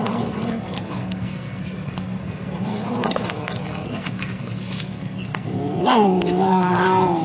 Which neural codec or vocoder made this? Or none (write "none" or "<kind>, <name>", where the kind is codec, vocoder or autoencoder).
codec, SNAC